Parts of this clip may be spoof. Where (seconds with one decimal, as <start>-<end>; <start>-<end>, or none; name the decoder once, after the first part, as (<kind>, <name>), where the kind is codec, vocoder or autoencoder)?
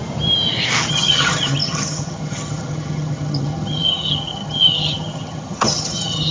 0.9-6.3 (vocoder, HiFi-GAN)